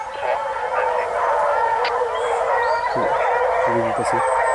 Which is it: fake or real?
real